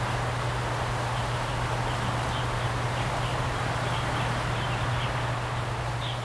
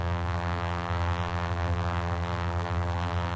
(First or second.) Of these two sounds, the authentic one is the first